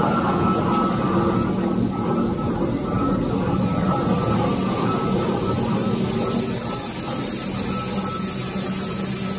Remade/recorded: recorded